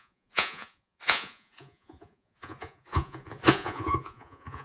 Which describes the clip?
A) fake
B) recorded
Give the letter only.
A